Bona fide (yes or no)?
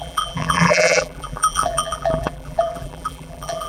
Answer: no